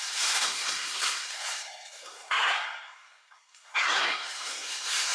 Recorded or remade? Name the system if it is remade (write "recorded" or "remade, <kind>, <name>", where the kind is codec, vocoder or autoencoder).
remade, codec, SNAC